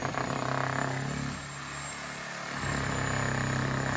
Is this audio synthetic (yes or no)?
no